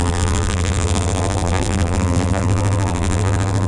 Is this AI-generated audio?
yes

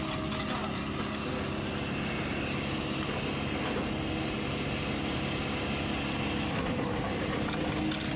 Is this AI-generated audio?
no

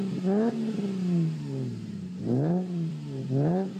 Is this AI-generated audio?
yes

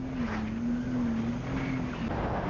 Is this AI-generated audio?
no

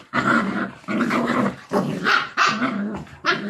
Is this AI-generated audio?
yes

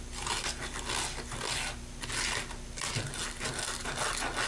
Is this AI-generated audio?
no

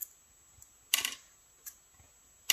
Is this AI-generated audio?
no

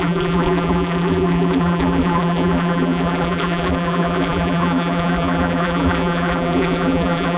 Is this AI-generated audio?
yes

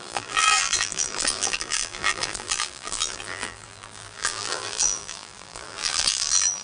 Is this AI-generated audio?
yes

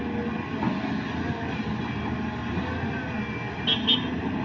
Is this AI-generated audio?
no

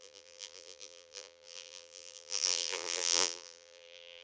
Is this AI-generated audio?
yes